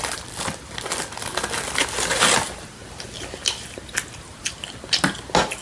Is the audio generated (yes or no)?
no